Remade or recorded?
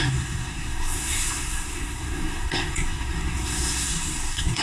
remade